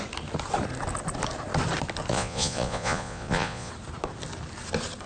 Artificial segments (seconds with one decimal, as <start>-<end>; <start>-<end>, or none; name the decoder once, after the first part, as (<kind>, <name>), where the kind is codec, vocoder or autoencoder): 2.1-3.7 (vocoder, Vocos)